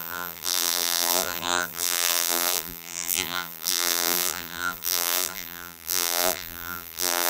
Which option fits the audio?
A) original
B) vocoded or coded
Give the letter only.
B